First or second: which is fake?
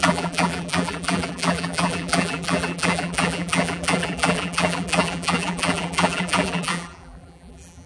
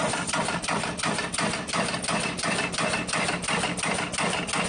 first